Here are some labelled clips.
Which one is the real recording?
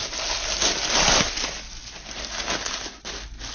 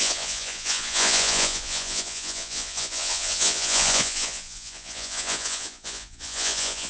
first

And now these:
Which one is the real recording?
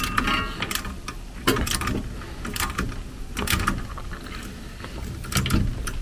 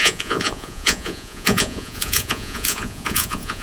first